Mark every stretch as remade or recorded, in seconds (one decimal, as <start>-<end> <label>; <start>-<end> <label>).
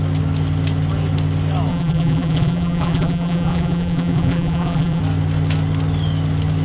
0.0-1.7 recorded; 1.7-5.0 remade; 5.0-6.6 recorded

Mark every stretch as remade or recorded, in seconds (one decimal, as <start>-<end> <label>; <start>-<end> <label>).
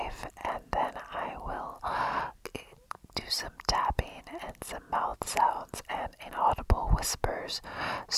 0.0-0.4 recorded; 0.4-0.9 remade; 0.9-2.5 recorded; 2.5-4.2 remade; 4.2-5.1 recorded; 5.1-6.3 remade; 6.3-8.2 recorded